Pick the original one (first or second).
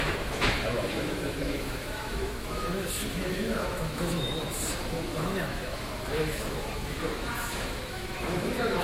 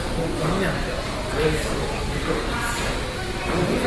second